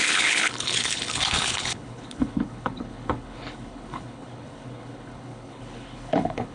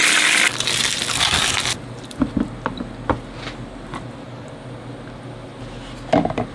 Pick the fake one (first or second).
first